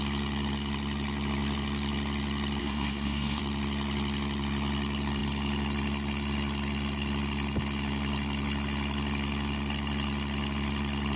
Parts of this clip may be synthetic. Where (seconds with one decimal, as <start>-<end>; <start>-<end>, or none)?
2.6-3.4